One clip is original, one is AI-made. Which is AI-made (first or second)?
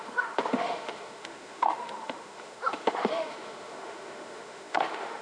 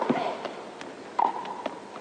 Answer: first